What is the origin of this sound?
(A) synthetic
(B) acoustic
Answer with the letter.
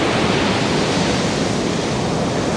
B